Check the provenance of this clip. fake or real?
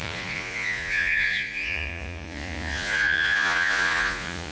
fake